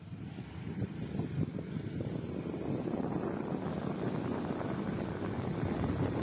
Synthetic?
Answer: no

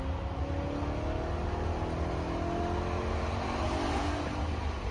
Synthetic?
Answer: no